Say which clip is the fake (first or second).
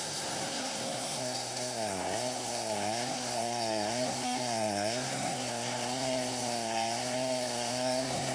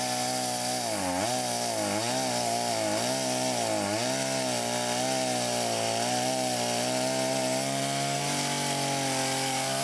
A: first